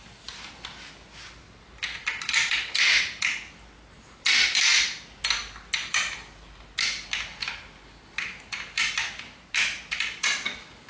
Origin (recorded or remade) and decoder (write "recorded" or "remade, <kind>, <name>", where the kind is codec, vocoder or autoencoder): recorded